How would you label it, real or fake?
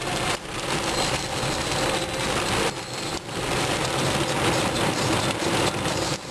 real